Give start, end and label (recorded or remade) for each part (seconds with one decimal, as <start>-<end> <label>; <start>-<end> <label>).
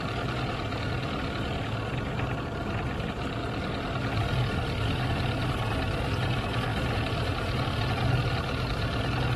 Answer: 0.0-6.7 recorded; 6.7-8.1 remade; 8.1-9.4 recorded